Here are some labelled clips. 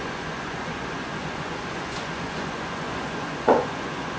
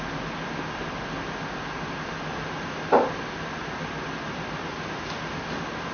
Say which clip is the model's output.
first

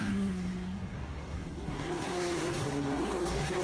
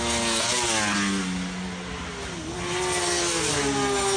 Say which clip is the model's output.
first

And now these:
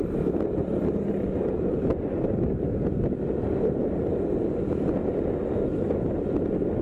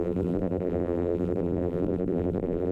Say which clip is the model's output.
second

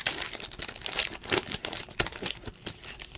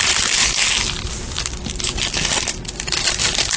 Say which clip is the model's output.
first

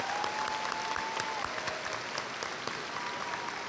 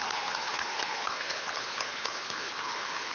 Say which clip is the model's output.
second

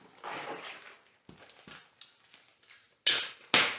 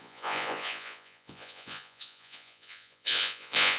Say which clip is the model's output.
second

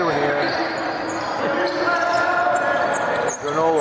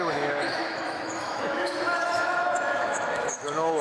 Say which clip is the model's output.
second